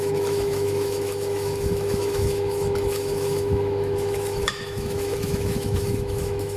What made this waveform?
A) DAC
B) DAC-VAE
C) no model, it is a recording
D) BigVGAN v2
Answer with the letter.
B